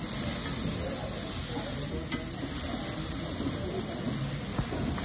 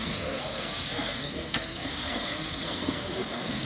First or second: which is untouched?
first